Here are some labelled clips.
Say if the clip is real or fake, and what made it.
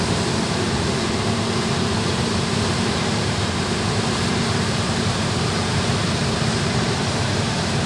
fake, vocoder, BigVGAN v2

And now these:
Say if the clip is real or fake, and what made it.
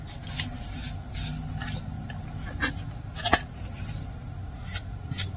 real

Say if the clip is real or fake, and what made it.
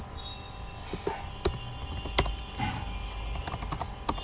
real